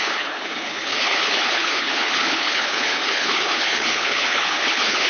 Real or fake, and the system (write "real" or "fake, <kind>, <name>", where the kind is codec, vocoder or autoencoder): fake, codec, HILCodec